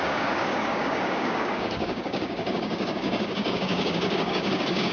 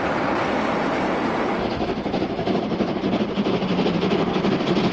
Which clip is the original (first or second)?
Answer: second